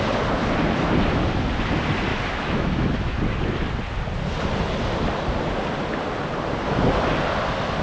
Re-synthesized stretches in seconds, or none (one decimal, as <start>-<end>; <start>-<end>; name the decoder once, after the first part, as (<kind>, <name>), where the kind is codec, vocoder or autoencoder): 2.1-3.2 (autoencoder, DAC-VAE)